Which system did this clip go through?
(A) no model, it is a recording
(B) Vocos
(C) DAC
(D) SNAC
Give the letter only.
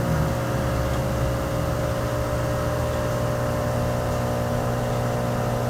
A